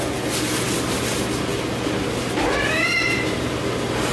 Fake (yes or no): no